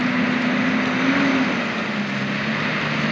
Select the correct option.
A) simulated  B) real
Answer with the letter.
B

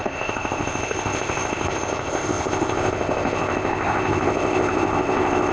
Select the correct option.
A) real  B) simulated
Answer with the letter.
B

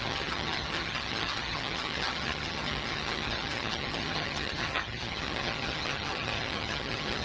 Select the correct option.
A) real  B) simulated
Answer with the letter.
B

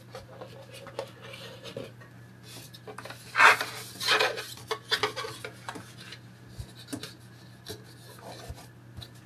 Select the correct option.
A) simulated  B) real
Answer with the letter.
B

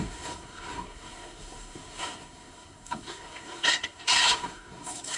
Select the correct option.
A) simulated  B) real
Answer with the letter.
A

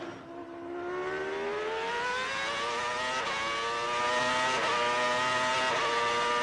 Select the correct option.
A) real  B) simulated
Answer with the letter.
A